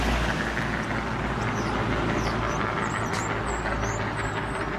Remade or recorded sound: recorded